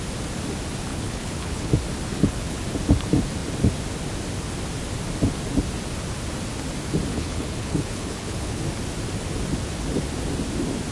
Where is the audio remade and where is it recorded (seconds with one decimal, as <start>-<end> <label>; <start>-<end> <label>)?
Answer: 0.0-0.9 recorded; 0.9-1.7 remade; 1.7-2.1 recorded; 2.1-2.6 remade; 2.6-7.1 recorded; 7.1-8.6 remade; 8.6-10.9 recorded